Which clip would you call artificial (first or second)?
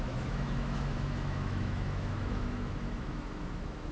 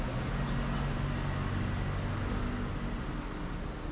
first